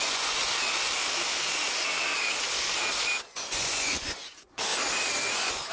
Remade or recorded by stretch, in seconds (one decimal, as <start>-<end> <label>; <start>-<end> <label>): 0.0-0.4 remade; 0.4-3.2 recorded; 3.2-4.7 remade; 4.7-5.3 recorded; 5.3-5.7 remade